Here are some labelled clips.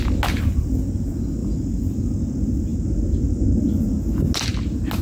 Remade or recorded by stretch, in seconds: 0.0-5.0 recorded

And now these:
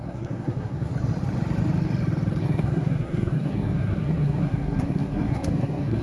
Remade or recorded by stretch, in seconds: 0.0-0.9 remade; 0.9-2.4 recorded; 2.4-6.0 remade